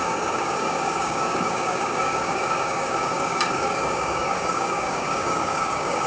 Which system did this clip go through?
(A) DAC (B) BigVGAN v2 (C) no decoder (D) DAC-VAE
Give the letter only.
A